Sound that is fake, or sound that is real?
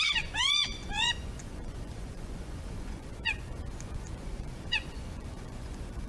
fake